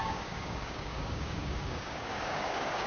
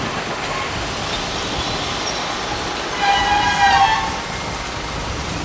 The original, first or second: second